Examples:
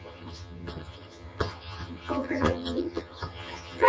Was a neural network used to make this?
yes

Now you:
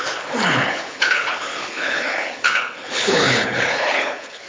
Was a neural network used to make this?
yes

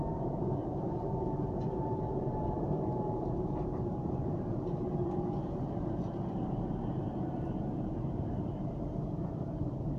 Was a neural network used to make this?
yes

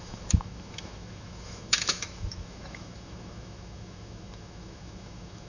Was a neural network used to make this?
yes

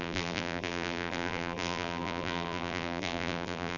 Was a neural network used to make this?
yes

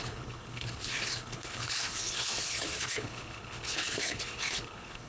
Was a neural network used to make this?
yes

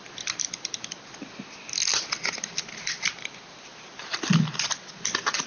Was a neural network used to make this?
no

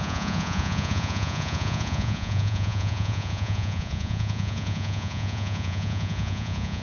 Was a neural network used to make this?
yes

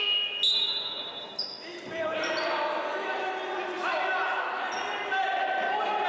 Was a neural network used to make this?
no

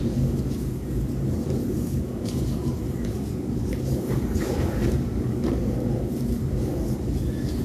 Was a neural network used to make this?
yes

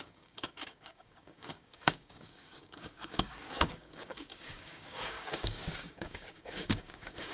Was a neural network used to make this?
yes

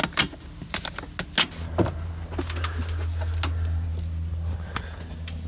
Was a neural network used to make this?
no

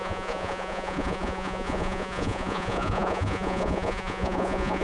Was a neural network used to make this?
yes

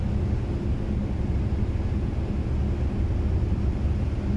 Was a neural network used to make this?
no